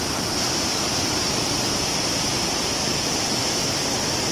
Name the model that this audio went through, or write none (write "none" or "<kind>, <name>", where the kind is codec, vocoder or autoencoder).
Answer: vocoder, BigVGAN v2